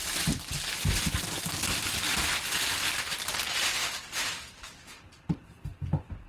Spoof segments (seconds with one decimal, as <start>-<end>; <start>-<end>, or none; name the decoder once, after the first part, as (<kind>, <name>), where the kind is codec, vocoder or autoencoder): 0.0-5.7 (vocoder, BigVGAN v2)

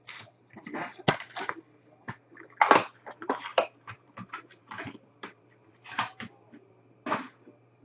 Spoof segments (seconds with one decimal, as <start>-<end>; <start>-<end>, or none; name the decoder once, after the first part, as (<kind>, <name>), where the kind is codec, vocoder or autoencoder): 3.5-6.9 (vocoder, BigVGAN v2)

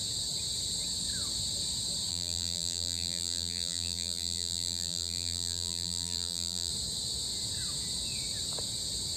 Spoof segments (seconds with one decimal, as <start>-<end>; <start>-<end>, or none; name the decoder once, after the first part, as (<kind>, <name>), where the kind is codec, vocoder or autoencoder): 2.1-6.7 (vocoder, BigVGAN v2)